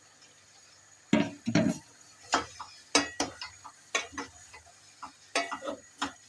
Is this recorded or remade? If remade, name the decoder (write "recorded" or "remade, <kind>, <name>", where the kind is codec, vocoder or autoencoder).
recorded